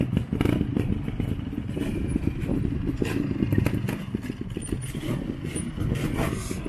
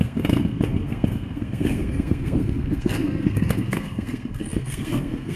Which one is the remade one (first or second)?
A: second